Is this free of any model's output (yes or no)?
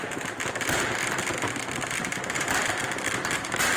yes